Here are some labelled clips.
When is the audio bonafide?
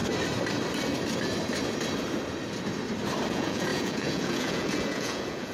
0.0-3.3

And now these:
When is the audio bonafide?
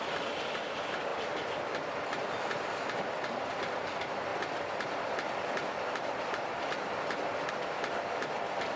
0.0-4.3; 7.5-8.8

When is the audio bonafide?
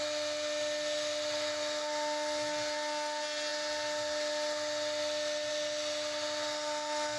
0.0-7.2